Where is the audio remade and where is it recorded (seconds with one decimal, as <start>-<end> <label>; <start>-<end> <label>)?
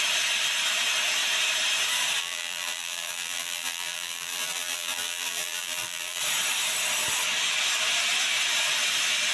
0.0-2.2 recorded; 2.2-6.2 remade; 6.2-9.3 recorded